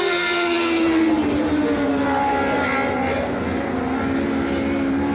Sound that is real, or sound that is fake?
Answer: real